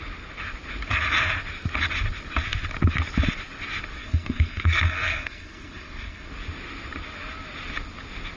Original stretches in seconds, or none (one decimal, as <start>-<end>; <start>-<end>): 0.0-4.0; 6.3-8.4